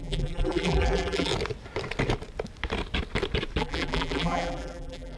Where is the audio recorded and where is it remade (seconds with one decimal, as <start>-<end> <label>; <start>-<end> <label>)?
0.0-1.3 remade; 1.3-3.6 recorded; 3.6-5.2 remade